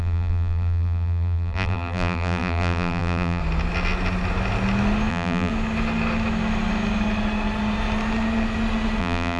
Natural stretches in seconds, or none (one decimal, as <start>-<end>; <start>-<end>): 3.4-5.1; 5.5-9.0

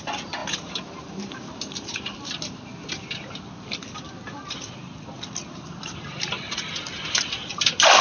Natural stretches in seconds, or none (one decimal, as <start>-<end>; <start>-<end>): 0.0-0.4; 2.9-5.4; 6.4-8.0

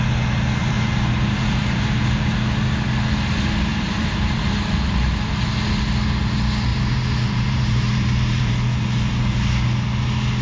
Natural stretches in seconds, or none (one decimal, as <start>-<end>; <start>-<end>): 0.0-0.6; 2.0-3.7; 5.5-6.7; 8.5-10.4